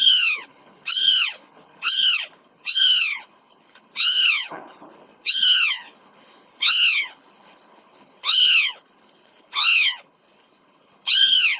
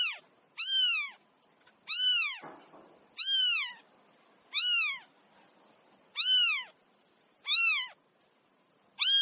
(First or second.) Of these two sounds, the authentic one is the second